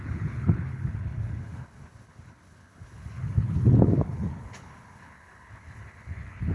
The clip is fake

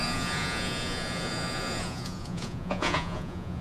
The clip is fake